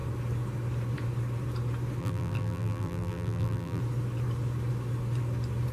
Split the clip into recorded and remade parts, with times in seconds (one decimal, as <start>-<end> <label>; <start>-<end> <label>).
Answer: 0.0-2.0 recorded; 2.0-3.8 remade; 3.8-5.7 recorded